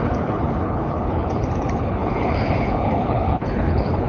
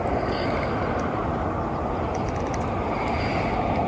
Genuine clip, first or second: second